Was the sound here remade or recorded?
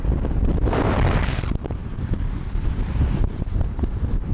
remade